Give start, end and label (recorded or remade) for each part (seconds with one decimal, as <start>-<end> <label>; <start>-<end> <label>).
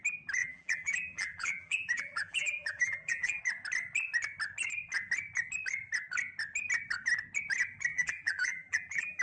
0.0-0.4 recorded; 0.4-3.4 remade; 3.4-7.9 recorded; 7.9-9.2 remade